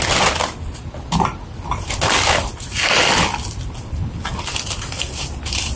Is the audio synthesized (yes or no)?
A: no